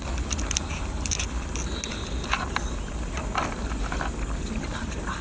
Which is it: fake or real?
real